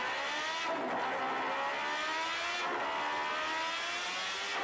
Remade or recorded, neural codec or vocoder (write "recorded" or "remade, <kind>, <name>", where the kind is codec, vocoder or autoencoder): recorded